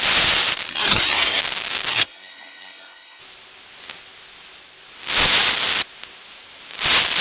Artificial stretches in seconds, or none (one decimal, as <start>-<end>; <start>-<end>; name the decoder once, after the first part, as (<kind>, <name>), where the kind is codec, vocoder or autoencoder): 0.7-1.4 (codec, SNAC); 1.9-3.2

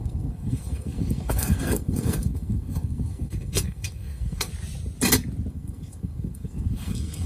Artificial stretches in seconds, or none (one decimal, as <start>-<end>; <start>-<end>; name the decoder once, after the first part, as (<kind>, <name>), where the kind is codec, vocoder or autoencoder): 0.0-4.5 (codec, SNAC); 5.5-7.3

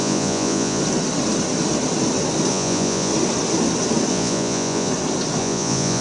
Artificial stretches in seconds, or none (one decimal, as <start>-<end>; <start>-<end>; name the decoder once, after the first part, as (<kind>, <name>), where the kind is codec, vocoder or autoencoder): 0.0-0.8 (vocoder, Vocos); 2.5-3.1; 4.1-4.9; 5.4-6.0

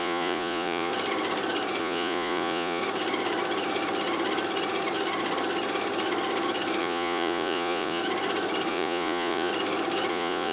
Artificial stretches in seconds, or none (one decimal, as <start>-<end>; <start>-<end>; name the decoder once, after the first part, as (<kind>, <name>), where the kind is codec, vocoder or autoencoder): 0.0-0.9 (vocoder, Vocos); 1.8-2.8; 6.8-8.0; 8.7-9.5; 10.1-10.5

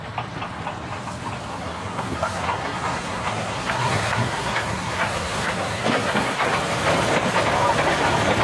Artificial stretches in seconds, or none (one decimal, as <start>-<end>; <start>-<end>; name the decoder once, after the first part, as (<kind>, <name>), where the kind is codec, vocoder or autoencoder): 1.5-6.5 (codec, SNAC)

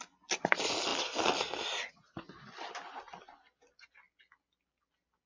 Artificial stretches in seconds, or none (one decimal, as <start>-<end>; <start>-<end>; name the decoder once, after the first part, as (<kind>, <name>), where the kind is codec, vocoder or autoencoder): none

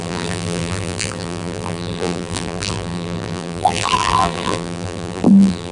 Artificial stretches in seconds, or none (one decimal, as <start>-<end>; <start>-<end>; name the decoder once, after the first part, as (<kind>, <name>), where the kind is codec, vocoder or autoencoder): 0.0-5.7 (vocoder, BigVGAN v2)